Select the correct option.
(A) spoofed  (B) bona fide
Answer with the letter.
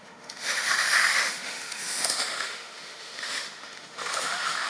A